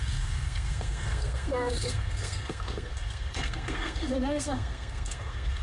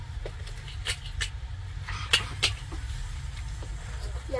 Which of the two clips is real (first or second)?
second